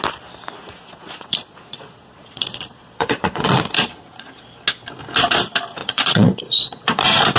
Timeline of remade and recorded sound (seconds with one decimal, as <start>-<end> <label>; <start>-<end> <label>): 0.0-0.6 recorded; 0.6-4.3 remade; 4.3-5.8 recorded; 5.8-7.0 remade; 7.0-7.4 recorded